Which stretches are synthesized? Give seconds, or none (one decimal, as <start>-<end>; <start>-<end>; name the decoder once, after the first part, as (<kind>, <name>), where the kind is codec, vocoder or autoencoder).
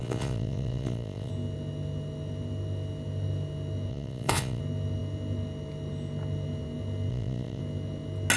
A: 0.0-1.3 (vocoder, Vocos); 3.9-4.6; 7.1-7.6